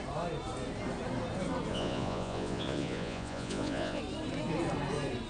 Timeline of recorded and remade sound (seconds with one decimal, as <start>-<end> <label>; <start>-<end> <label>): 0.0-1.7 recorded; 1.7-4.0 remade; 4.0-5.3 recorded